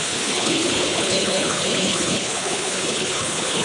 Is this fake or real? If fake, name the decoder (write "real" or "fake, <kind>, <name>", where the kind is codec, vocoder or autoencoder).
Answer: fake, codec, HILCodec